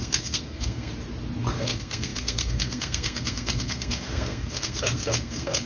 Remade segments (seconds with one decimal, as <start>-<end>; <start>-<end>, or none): 0.0-0.9; 1.5-5.7